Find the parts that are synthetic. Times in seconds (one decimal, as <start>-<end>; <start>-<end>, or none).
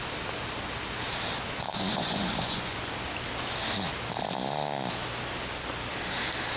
1.7-2.9